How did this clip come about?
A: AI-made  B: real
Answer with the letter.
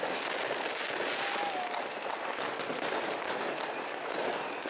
B